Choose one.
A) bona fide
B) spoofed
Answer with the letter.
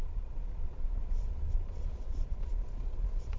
B